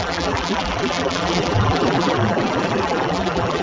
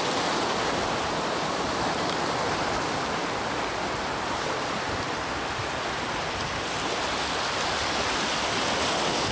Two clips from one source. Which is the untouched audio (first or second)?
second